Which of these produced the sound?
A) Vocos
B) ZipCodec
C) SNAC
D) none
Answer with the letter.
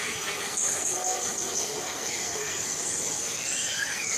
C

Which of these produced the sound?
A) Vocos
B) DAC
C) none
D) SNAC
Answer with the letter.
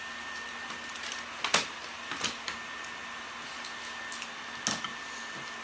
C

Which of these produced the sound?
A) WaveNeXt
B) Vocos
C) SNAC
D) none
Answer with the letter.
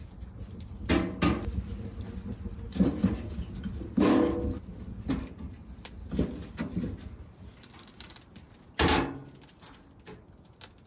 D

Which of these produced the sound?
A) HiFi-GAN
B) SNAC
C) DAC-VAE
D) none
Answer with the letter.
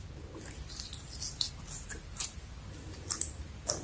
D